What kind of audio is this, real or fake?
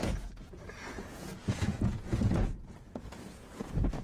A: fake